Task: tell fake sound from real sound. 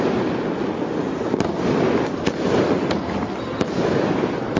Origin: real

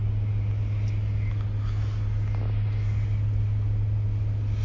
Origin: real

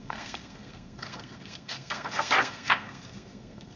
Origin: fake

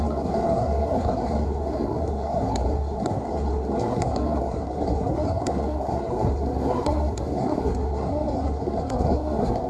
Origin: fake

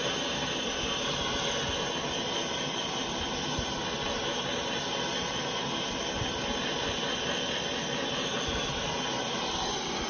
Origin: real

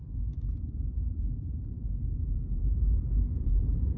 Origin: fake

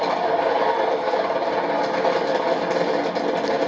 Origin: real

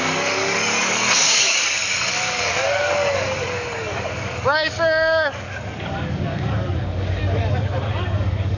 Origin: fake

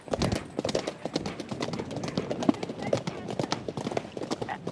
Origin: real